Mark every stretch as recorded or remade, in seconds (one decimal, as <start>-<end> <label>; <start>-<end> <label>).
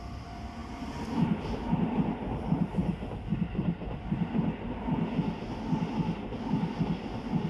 0.0-7.5 recorded